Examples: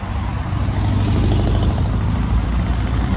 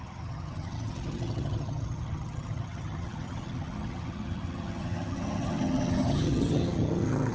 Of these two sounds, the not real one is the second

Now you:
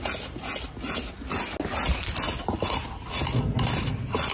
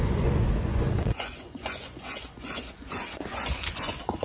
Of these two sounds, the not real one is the second